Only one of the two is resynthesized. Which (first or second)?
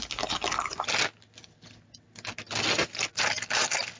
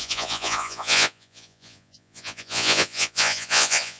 second